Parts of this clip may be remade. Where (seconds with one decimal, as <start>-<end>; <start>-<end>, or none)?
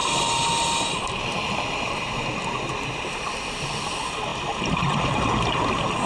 none